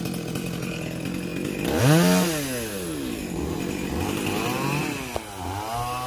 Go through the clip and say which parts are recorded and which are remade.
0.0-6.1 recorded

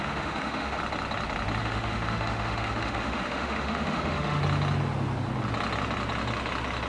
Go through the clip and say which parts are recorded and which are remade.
0.0-0.8 remade; 0.8-1.6 recorded; 1.6-4.4 remade; 4.4-6.9 recorded

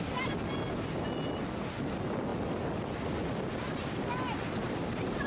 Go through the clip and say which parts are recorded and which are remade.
0.0-5.3 recorded

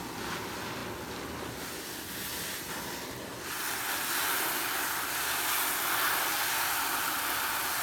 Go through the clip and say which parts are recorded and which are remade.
0.0-7.8 recorded

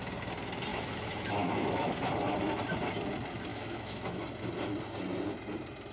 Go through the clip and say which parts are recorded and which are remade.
0.0-0.7 recorded; 0.7-2.1 remade; 2.1-3.5 recorded; 3.5-4.2 remade; 4.2-5.9 recorded

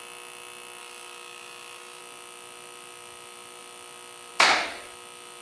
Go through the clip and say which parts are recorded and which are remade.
0.0-0.8 recorded; 0.8-2.0 remade; 2.0-5.4 recorded